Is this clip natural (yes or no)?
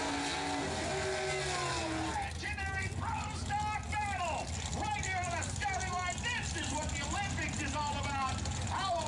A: yes